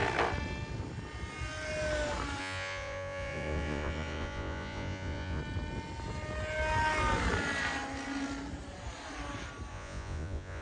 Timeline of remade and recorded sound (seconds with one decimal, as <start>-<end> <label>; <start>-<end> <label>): 0.0-2.4 recorded; 2.4-5.4 remade; 5.4-9.7 recorded; 9.7-10.6 remade